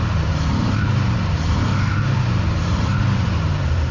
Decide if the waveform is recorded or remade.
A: remade